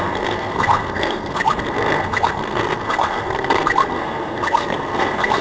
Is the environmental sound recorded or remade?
remade